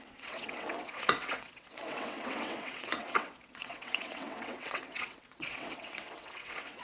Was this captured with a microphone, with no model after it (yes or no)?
no